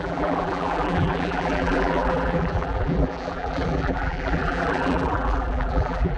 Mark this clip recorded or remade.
remade